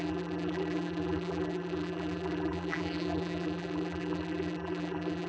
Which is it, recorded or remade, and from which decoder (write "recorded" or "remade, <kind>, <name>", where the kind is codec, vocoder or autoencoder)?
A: remade, vocoder, BigVGAN v2